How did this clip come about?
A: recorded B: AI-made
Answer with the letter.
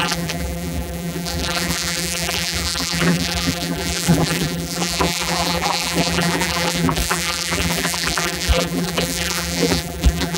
B